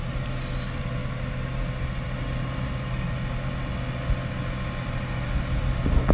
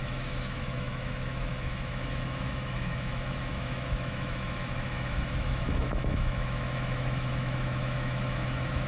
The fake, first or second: second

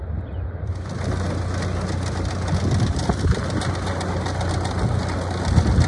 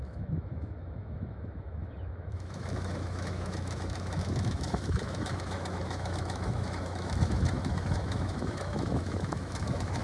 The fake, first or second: second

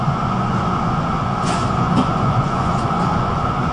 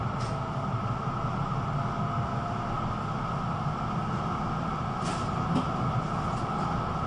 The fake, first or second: first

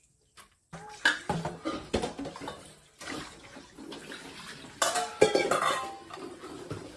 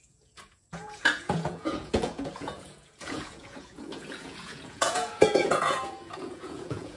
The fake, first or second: second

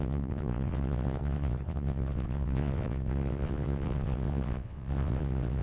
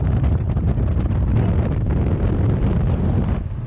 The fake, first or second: first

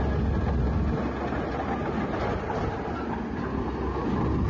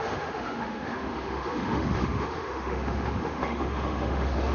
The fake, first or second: second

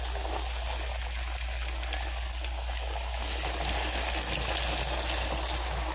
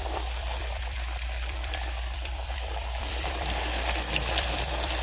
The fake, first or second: second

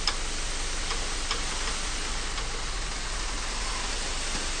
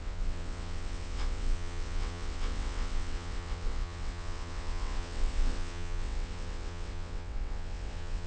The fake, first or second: second